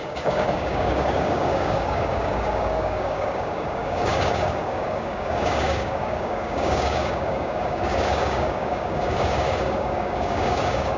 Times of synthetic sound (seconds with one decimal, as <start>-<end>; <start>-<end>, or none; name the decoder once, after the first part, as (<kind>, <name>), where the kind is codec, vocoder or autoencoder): 0.0-11.0 (codec, DAC)